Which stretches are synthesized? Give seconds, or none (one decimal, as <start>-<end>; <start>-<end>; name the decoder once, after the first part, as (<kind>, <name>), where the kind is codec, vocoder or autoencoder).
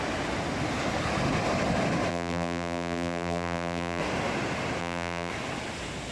2.1-4.0 (vocoder, BigVGAN v2); 4.8-5.3